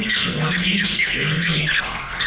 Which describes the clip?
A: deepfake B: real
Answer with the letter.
A